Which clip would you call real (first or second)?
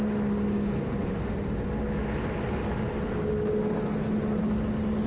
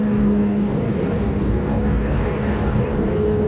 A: first